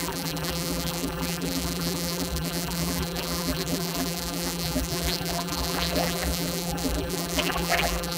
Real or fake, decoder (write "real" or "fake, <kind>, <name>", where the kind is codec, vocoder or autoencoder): fake, vocoder, BigVGAN v2